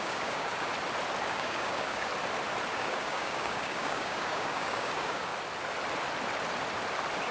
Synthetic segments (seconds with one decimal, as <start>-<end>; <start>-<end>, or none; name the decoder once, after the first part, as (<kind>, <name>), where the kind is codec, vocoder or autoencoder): 0.0-0.7 (codec, DAC); 1.2-2.1; 2.7-5.3